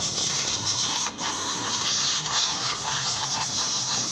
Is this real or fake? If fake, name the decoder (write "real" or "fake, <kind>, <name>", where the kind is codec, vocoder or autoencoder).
fake, codec, SNAC